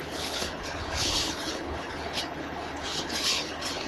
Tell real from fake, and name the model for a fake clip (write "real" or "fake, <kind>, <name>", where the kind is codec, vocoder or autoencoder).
fake, codec, HILCodec